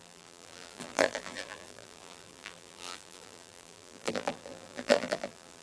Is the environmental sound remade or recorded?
remade